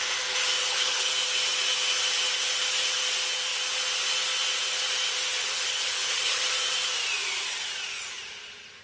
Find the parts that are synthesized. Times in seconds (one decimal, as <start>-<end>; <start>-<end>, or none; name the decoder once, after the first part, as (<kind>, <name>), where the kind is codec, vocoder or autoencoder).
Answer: 0.6-1.1 (codec, HILCodec); 5.4-6.4